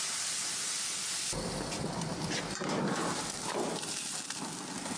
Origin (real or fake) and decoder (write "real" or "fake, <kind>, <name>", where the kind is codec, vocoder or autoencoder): real